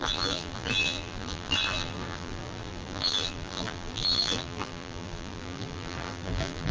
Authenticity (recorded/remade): remade